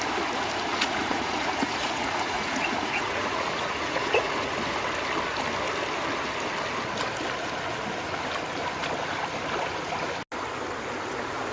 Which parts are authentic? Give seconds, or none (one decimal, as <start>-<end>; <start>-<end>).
0.0-0.7; 4.5-11.5

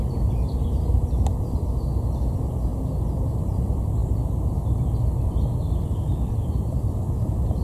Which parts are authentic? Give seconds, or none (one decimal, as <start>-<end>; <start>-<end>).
1.3-2.2; 2.7-3.3; 4.0-6.3

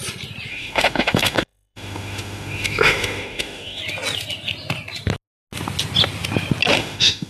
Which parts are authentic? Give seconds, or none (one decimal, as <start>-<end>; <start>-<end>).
0.0-0.5; 3.8-6.7